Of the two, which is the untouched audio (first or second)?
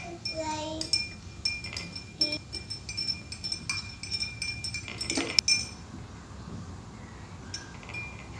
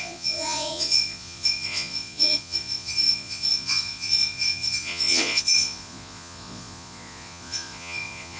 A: first